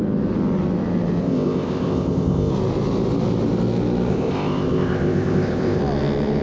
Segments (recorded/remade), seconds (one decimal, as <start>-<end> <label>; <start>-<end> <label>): 0.0-1.2 recorded; 1.2-2.5 remade; 2.5-4.1 recorded; 4.1-5.8 remade; 5.8-6.4 recorded